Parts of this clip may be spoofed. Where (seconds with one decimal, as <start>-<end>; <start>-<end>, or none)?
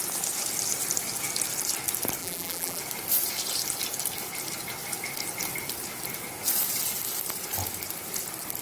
2.2-2.8